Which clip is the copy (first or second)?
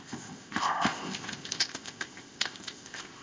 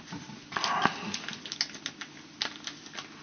first